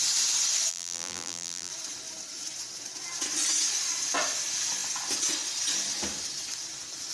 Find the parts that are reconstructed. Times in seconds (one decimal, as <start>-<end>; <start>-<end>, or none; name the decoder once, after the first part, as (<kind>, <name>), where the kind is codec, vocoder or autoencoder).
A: 0.7-1.7 (vocoder, BigVGAN v2)